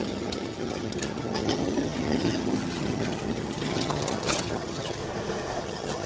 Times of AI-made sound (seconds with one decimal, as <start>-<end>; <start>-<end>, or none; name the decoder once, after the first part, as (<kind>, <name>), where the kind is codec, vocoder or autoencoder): 0.0-5.0 (vocoder, HiFi-GAN); 5.6-6.1